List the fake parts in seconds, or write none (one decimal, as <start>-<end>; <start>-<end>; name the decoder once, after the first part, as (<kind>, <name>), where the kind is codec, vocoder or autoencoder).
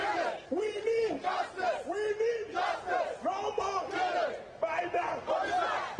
none